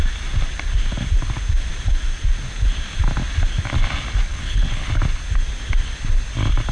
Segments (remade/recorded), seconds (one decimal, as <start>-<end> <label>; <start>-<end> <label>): 0.0-4.3 recorded; 4.3-4.9 remade; 4.9-6.7 recorded